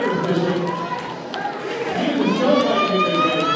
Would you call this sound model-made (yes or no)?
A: no